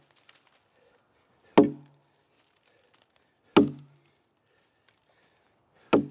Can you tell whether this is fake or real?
real